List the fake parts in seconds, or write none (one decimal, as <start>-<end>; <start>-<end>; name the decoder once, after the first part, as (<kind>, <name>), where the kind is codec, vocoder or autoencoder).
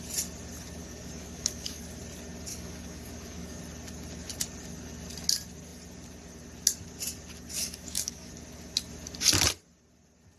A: 0.8-1.8 (codec, DAC); 2.5-3.6; 7.6-8.3